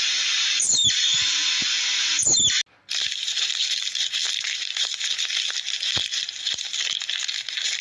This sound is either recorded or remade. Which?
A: recorded